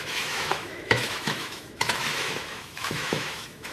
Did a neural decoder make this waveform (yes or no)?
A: yes